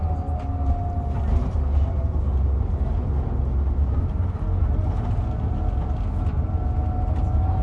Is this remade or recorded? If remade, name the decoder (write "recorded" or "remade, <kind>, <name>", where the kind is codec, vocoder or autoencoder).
recorded